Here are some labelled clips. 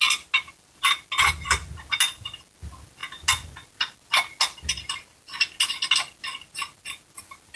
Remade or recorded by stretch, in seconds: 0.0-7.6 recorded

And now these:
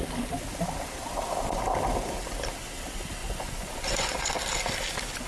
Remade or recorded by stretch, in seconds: 0.0-3.2 recorded; 3.2-4.3 remade; 4.3-5.3 recorded

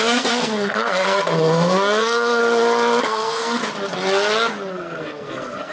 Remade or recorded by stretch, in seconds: 0.0-2.4 remade; 2.4-3.0 recorded; 3.0-3.6 remade; 3.6-4.7 recorded; 4.7-5.7 remade

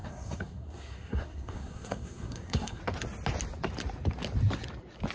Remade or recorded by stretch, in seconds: 0.0-2.8 remade; 2.8-5.1 recorded

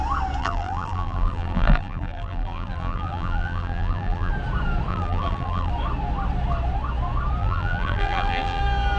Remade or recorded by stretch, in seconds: 0.0-0.4 recorded; 0.4-4.3 remade; 4.3-4.9 recorded; 4.9-5.7 remade; 5.7-7.4 recorded; 7.4-8.6 remade; 8.6-9.0 recorded

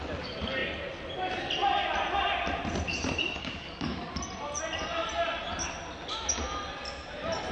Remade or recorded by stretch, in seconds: 0.0-3.4 recorded; 3.4-4.1 remade; 4.1-7.5 recorded